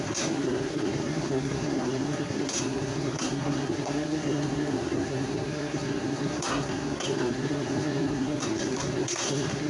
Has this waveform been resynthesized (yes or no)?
yes